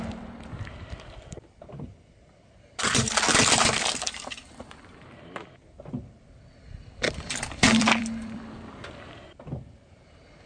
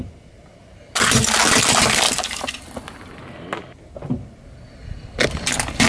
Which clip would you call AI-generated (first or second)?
first